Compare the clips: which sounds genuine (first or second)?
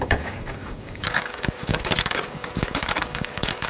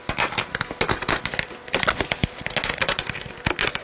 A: second